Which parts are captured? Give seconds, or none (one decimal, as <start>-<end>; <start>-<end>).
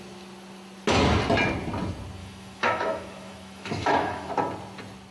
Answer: 0.0-2.2; 4.3-5.1